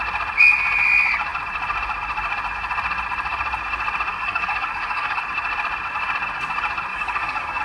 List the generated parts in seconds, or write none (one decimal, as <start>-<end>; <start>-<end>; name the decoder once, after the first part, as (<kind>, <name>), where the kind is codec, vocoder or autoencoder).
4.1-5.2 (codec, DAC); 6.9-7.6